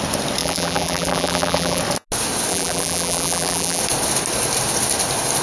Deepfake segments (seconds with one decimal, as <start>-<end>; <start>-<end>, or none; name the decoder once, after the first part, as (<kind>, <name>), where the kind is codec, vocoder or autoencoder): 0.4-1.8 (vocoder, BigVGAN v2); 2.5-3.8